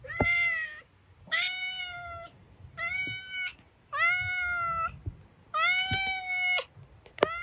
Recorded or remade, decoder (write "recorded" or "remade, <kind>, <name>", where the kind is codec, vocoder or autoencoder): recorded